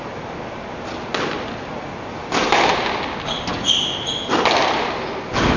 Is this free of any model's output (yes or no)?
yes